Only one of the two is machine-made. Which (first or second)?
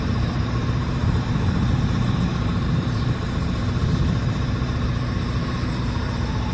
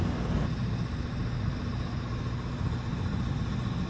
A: first